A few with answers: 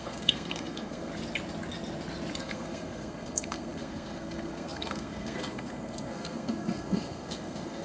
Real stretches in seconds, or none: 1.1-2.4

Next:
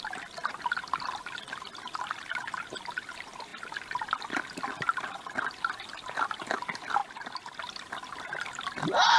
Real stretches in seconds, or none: 0.0-9.2

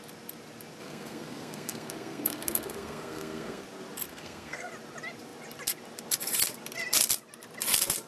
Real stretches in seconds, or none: 0.0-0.8; 3.6-4.1; 4.7-8.1

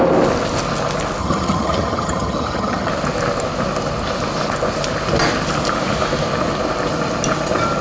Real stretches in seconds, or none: 0.0-1.2; 2.9-7.8

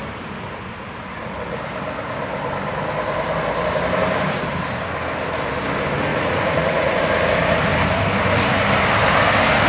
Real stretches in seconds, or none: 0.0-6.1; 7.0-9.7

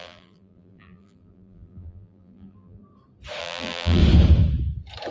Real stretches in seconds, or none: 2.8-3.4; 4.0-5.1